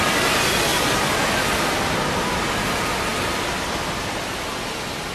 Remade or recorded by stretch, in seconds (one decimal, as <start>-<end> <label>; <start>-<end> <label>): 0.0-5.1 recorded